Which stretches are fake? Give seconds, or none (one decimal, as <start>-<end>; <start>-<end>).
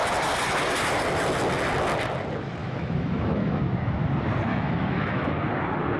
2.6-3.6; 4.5-5.3